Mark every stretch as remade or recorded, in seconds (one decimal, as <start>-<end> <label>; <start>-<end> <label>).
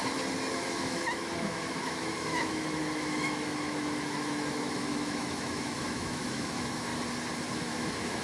0.0-0.5 recorded; 0.5-6.9 remade; 6.9-7.5 recorded; 7.5-8.2 remade